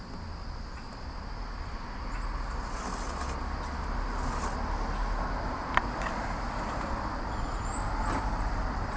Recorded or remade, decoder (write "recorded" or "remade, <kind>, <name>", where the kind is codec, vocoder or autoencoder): recorded